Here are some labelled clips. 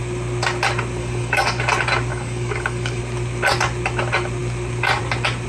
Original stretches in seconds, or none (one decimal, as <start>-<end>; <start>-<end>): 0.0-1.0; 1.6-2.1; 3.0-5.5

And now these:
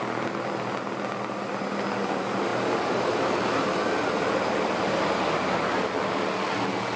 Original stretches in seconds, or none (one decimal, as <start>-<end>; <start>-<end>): 0.0-7.0

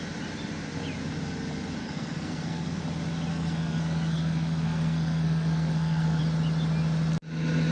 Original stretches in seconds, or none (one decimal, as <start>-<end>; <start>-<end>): 0.0-1.8; 2.8-3.3; 6.2-7.7

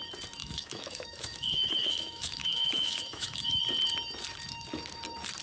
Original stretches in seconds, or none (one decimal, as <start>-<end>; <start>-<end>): 0.0-0.4; 3.6-5.4